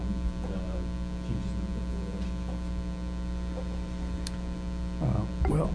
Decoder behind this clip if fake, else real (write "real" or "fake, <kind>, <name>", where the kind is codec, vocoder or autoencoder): real